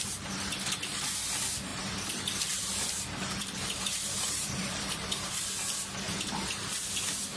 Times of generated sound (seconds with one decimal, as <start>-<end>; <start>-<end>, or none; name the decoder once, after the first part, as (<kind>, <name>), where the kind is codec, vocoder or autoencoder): 1.7-5.5 (vocoder, BigVGAN v2)

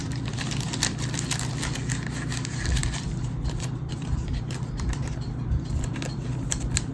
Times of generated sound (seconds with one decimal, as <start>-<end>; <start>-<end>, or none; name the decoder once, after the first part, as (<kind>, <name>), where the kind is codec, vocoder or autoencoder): 0.0-1.5 (vocoder, BigVGAN v2); 2.8-6.9

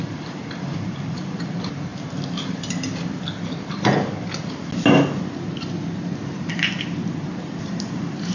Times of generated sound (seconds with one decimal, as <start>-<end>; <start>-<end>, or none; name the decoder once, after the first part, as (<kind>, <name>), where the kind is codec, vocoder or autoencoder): 0.0-1.9 (vocoder, BigVGAN v2); 6.3-8.3

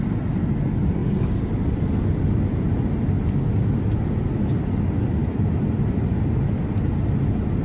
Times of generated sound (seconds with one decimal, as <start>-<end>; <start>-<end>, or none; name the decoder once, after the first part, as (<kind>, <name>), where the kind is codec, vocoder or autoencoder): 5.2-6.2 (vocoder, BigVGAN v2)

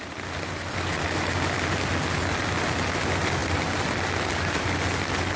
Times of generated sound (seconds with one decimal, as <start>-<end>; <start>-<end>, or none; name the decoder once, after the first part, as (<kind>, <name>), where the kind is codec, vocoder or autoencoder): none

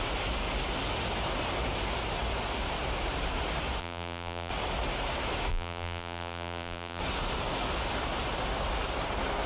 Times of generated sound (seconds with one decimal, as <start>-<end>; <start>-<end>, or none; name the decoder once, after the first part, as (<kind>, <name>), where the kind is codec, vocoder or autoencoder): 3.8-4.5 (vocoder, BigVGAN v2); 5.5-7.0

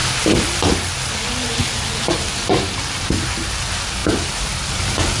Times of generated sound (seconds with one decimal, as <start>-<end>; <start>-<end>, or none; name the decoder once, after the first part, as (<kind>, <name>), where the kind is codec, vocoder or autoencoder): none